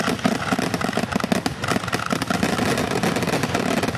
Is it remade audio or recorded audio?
recorded